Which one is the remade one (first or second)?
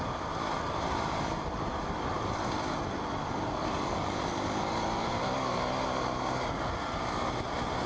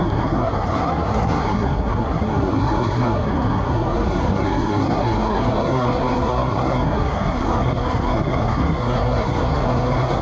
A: second